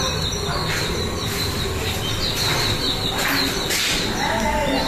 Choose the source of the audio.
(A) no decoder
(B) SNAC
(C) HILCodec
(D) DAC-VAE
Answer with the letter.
A